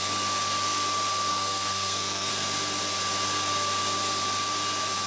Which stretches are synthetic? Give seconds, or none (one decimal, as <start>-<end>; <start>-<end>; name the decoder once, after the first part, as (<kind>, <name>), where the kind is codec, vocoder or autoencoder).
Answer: 1.3-2.3 (codec, SNAC)